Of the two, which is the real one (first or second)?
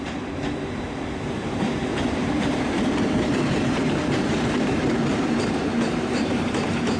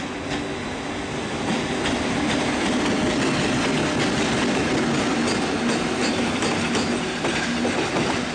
second